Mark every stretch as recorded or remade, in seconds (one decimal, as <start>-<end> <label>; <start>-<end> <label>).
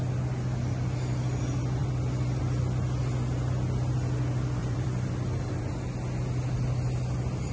0.0-1.8 recorded; 1.8-2.4 remade; 2.4-4.6 recorded; 4.6-5.6 remade; 5.6-7.5 recorded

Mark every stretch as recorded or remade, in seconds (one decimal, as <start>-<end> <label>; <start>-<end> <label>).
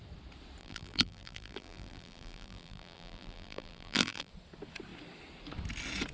0.0-0.6 recorded; 0.6-4.3 remade; 4.3-6.1 recorded